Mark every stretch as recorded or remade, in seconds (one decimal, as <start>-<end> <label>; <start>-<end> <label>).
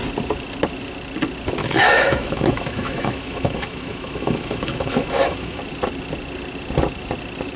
0.0-1.6 recorded; 1.6-5.6 remade; 5.6-7.6 recorded